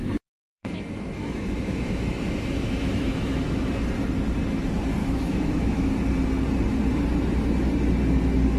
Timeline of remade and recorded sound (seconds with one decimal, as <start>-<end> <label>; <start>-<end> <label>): 0.0-3.7 remade; 3.7-5.0 recorded; 5.0-5.9 remade; 5.9-8.6 recorded